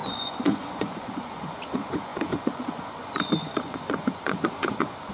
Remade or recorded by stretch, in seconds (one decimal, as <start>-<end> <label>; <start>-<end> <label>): 0.0-5.1 remade